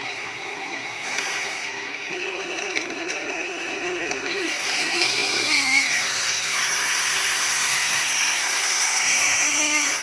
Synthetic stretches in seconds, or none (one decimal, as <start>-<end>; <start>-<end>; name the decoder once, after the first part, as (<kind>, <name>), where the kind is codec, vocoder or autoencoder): 0.0-10.0 (codec, SNAC)